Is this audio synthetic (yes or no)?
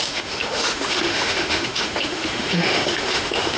yes